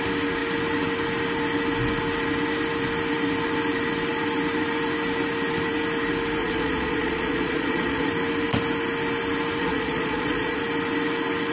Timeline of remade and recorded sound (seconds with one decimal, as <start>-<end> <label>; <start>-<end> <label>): 0.0-6.4 recorded; 6.4-8.1 remade; 8.1-9.6 recorded; 9.6-10.6 remade; 10.6-11.5 recorded